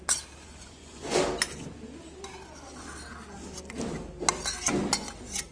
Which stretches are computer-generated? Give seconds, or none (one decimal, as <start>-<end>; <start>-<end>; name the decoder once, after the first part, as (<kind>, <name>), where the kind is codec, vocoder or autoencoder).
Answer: 0.4-1.2 (vocoder, Vocos)